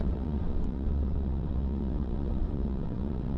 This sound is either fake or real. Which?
fake